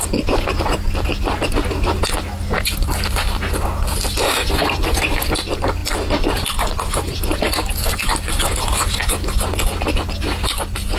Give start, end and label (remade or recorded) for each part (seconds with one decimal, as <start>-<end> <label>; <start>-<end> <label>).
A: 0.0-11.0 recorded